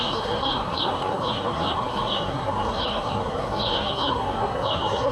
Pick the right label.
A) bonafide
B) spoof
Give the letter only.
B